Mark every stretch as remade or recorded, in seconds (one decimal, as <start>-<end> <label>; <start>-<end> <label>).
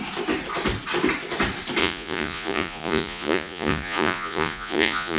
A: 0.0-1.8 recorded; 1.8-5.2 remade